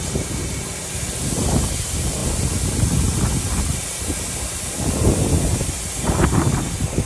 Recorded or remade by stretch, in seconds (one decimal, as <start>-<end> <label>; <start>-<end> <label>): 0.0-7.1 recorded